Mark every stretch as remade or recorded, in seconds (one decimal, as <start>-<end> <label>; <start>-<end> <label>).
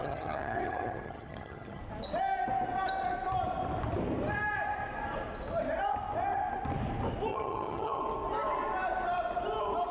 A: 0.0-1.8 remade; 1.8-7.3 recorded; 7.3-8.0 remade; 8.0-9.9 recorded